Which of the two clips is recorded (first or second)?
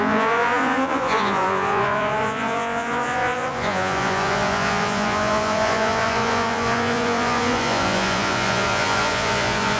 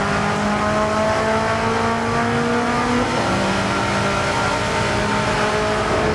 second